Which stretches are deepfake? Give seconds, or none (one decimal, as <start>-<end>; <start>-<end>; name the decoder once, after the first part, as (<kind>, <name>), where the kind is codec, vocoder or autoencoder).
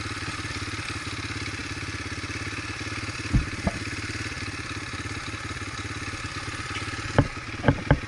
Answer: none